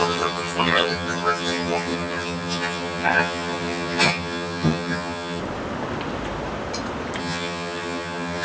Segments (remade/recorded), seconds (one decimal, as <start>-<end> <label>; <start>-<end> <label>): 0.0-5.4 remade; 5.4-7.2 recorded; 7.2-8.4 remade